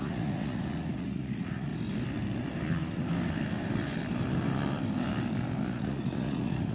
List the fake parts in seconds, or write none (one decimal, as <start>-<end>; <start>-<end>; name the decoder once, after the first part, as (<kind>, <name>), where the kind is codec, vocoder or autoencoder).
0.0-1.7 (vocoder, Vocos); 5.7-6.7